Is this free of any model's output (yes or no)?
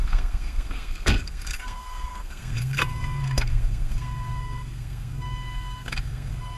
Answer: no